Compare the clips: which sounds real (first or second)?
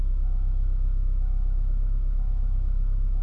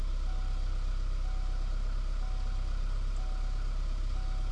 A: second